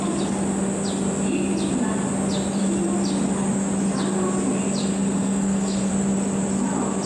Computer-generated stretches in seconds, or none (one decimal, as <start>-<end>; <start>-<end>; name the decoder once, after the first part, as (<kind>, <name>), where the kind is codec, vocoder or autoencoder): 4.8-5.9 (codec, SNAC)